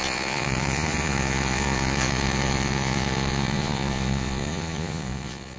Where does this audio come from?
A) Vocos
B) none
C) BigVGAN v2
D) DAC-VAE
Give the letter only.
A